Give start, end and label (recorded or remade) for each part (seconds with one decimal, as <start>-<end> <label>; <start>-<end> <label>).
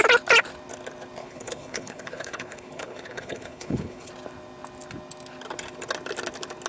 0.0-1.2 recorded; 1.2-4.1 remade; 4.1-6.7 recorded